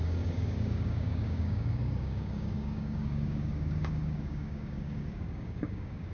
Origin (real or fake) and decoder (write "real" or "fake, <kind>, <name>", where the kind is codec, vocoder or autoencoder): fake, codec, DAC